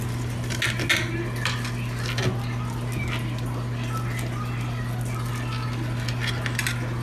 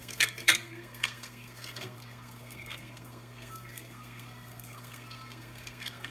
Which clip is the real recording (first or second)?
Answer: first